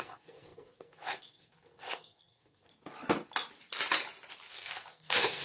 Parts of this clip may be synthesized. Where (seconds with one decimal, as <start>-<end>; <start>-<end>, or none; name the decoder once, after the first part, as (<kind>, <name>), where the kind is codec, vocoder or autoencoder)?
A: 0.0-2.7 (codec, SNAC); 4.5-5.4